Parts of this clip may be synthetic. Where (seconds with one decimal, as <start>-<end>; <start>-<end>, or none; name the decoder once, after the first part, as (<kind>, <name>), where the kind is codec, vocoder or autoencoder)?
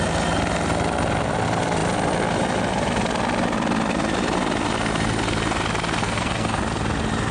6.0-6.6 (codec, SNAC)